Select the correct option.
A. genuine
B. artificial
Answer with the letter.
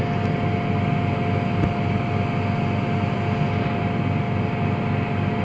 A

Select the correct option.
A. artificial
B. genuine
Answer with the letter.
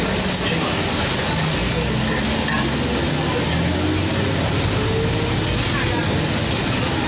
B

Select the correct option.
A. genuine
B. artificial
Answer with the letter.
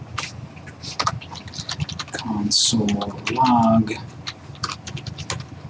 A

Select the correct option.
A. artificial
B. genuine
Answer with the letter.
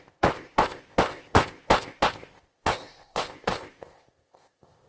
A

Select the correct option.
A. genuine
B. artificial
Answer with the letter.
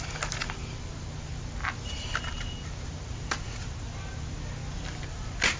A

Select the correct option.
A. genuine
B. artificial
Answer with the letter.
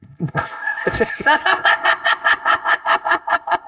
B